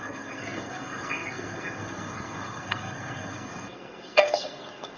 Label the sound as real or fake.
fake